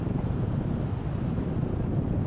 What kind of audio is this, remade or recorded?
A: recorded